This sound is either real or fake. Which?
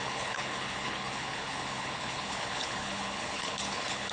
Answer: fake